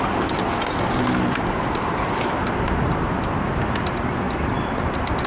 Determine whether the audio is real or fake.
real